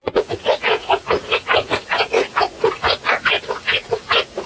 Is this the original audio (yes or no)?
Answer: no